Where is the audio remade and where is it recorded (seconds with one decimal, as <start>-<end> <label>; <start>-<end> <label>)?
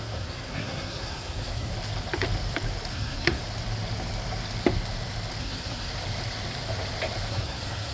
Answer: 0.0-1.7 remade; 1.7-2.9 recorded; 2.9-3.4 remade; 3.4-5.4 recorded; 5.4-5.9 remade; 5.9-7.3 recorded; 7.3-7.9 remade